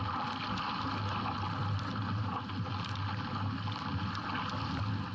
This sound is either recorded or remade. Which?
recorded